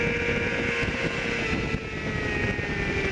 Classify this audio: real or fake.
real